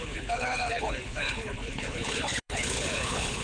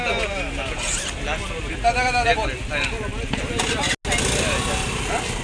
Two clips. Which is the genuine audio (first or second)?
second